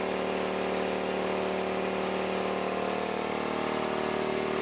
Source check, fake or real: real